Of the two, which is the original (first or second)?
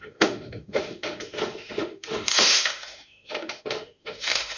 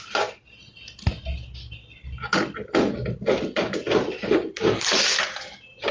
second